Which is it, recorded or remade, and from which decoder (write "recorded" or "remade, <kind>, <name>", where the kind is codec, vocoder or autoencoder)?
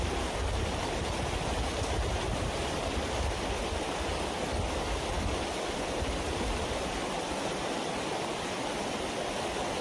recorded